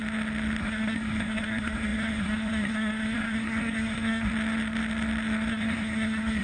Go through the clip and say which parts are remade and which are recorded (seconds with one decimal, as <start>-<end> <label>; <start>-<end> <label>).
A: 0.0-0.6 recorded; 0.6-4.3 remade; 4.3-5.5 recorded; 5.5-6.4 remade